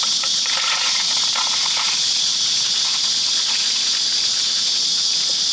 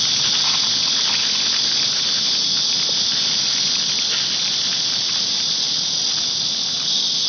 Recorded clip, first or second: second